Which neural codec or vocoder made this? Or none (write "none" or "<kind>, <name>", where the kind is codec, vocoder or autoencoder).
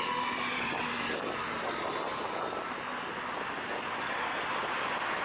none